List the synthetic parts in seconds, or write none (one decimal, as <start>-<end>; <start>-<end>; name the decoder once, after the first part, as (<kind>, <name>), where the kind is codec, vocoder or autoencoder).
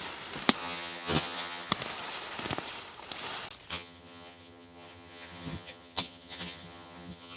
0.6-1.7 (vocoder, HiFi-GAN); 3.7-7.4